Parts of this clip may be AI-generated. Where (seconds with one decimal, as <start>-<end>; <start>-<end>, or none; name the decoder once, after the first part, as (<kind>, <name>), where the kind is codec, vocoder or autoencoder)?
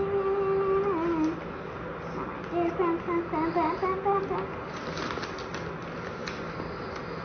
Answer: none